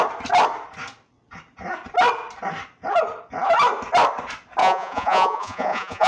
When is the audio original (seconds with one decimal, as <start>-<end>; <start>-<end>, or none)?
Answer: 0.0-4.6